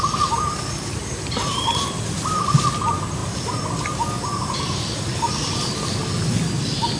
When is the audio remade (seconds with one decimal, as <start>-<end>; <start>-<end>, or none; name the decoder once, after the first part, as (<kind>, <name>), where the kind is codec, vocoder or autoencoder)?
none